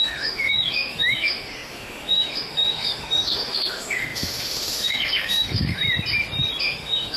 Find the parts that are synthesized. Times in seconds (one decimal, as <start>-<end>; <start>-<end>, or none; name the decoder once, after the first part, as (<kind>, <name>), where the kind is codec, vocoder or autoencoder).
0.0-5.8 (autoencoder, DAC-VAE); 6.6-7.2